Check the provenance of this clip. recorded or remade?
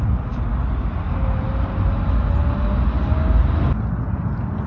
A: recorded